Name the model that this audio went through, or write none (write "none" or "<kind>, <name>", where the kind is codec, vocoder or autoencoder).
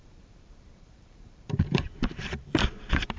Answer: vocoder, BigVGAN v2